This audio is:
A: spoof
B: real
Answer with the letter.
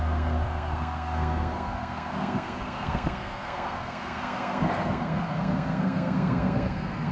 A